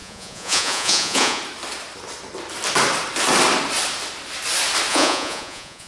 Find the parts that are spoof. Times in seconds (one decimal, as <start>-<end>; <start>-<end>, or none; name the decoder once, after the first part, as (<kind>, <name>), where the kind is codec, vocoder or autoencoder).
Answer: 0.0-1.4 (vocoder, Vocos); 4.9-5.9